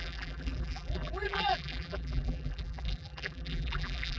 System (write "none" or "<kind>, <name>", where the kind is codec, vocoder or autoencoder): vocoder, BigVGAN v2